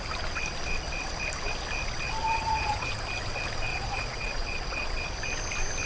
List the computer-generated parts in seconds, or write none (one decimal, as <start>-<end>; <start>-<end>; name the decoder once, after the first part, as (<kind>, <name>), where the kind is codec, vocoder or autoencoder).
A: 2.2-2.9 (vocoder, Vocos); 3.7-4.9